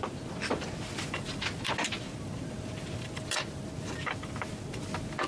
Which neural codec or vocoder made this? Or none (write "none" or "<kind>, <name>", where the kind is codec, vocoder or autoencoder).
none